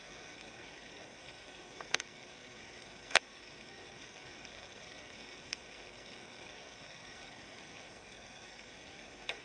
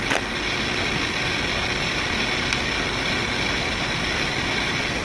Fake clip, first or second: first